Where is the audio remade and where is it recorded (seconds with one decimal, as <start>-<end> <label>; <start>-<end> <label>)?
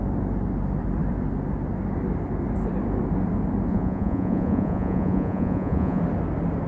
0.0-3.7 recorded; 3.7-6.0 remade; 6.0-6.7 recorded